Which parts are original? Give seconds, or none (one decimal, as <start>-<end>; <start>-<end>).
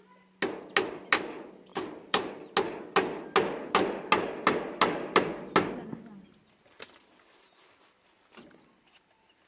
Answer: 0.0-1.7; 2.3-9.5